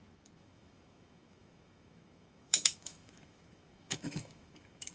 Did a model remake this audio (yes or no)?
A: yes